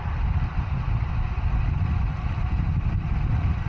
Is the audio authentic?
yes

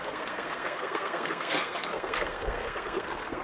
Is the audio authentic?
no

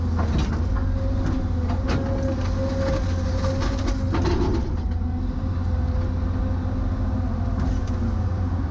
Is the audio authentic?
yes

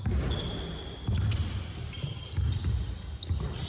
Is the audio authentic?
yes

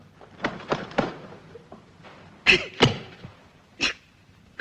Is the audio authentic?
no